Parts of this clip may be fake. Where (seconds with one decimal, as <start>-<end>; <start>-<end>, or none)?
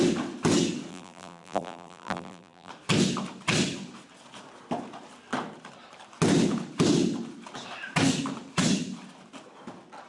0.9-2.7